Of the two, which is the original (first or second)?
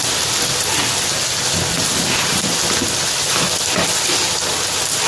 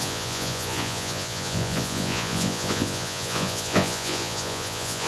first